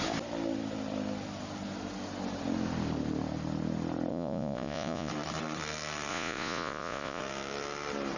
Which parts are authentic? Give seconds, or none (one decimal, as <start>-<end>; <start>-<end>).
0.0-4.1; 5.1-6.1; 7.2-8.2